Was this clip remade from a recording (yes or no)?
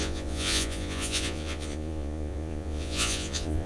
yes